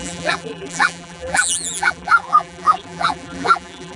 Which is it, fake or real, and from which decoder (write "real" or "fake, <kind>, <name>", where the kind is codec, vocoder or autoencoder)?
fake, vocoder, BigVGAN v2